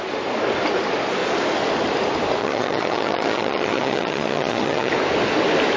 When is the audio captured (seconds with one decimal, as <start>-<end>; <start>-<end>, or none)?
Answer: 0.0-2.4; 4.9-5.8